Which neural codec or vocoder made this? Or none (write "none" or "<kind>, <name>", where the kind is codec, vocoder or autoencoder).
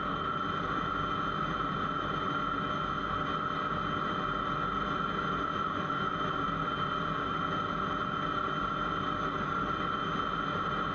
none